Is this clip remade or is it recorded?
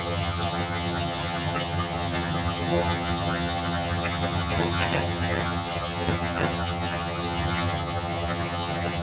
remade